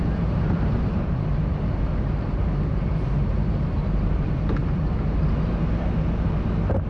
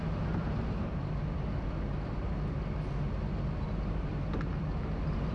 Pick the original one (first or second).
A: second